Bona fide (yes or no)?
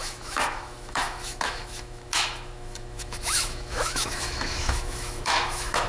no